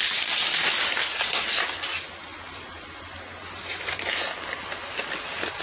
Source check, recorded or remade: recorded